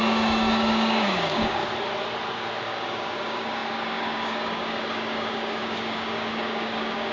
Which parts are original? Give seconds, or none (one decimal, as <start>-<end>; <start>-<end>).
1.6-2.6